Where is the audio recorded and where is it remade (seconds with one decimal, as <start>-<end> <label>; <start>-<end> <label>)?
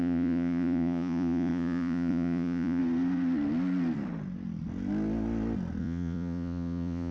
0.0-2.8 remade; 2.8-5.8 recorded; 5.8-7.1 remade